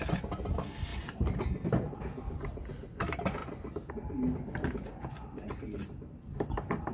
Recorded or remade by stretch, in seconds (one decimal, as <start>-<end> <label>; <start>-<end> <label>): 0.0-6.9 recorded